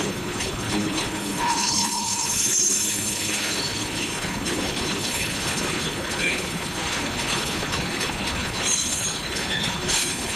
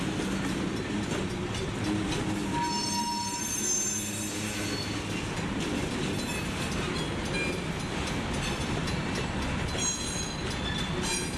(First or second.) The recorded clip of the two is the second